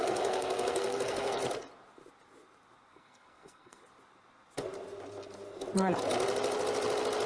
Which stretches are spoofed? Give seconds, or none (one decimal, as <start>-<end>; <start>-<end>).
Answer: 0.0-1.4; 2.9-3.8